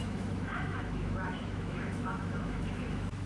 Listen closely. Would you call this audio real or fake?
fake